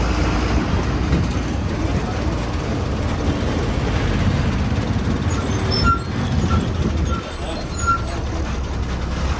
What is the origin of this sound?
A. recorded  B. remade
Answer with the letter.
A